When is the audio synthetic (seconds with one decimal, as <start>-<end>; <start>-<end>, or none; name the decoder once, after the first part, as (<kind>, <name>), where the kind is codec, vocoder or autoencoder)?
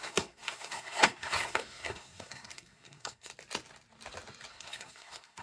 0.0-3.3 (codec, SNAC); 4.5-5.4